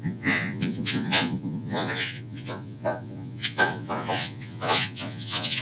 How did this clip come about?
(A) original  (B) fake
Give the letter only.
B